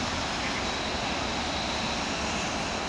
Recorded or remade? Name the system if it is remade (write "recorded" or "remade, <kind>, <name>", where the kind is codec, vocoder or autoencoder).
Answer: recorded